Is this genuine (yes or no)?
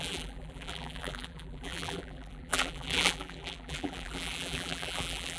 no